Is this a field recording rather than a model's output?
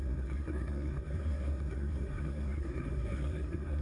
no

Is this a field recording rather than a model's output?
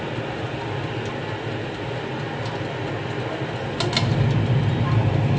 yes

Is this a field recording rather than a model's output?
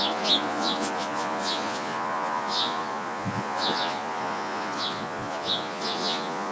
no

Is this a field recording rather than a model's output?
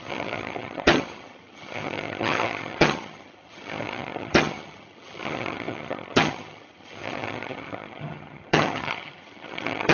no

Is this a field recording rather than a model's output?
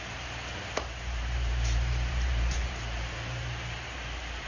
no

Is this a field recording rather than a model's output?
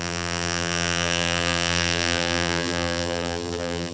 no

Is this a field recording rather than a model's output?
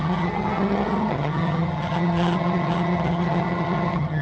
no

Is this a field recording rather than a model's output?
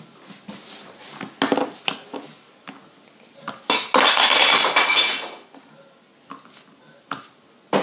yes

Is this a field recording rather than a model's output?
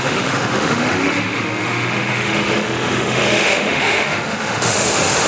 no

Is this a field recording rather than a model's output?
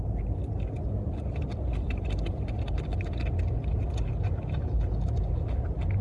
yes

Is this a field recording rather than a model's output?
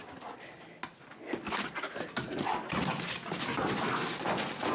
yes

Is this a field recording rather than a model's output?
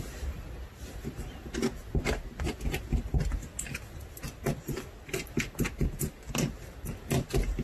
yes